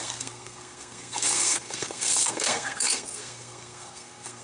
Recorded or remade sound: remade